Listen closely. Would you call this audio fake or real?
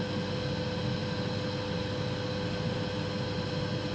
real